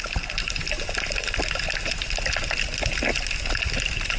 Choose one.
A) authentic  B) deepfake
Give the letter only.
A